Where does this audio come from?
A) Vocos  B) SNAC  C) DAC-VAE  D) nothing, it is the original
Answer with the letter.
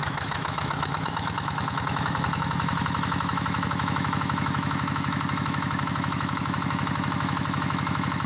C